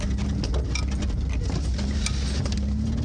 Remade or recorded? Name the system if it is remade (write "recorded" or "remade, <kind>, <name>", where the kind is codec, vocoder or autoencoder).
recorded